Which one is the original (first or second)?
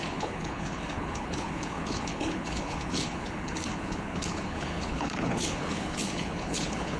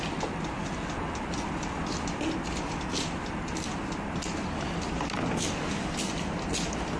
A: second